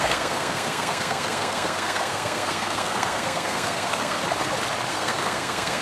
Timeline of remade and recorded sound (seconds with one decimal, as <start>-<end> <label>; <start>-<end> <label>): 0.0-4.2 remade; 4.2-4.9 recorded; 4.9-5.8 remade